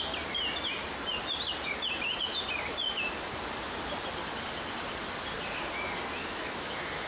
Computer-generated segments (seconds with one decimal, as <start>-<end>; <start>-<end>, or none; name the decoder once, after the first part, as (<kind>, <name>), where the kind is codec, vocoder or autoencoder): 6.2-7.1 (autoencoder, DAC-VAE)